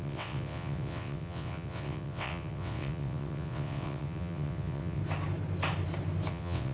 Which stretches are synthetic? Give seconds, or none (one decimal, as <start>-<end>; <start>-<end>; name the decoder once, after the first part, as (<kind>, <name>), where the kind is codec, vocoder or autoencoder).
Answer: 0.0-5.0 (vocoder, WaveNeXt); 6.3-6.7